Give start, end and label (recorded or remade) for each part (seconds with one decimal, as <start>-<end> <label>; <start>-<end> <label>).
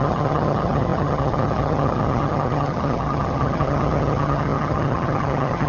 0.0-5.7 remade